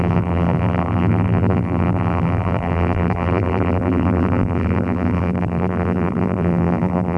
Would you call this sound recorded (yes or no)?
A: no